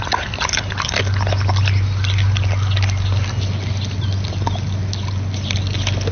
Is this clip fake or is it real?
real